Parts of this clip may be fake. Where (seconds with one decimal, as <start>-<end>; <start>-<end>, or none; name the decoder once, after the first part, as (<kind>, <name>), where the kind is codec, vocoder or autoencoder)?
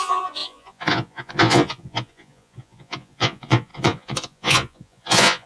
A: 0.0-5.5 (vocoder, Vocos)